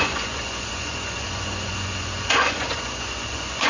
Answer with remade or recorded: remade